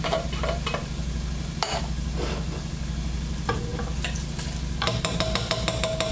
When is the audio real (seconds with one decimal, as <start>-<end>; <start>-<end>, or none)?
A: 0.0-6.1